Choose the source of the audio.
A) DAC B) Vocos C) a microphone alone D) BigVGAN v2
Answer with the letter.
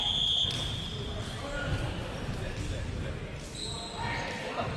C